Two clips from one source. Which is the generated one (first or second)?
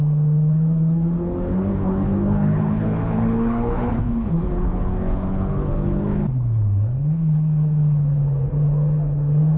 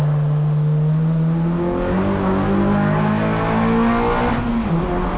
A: first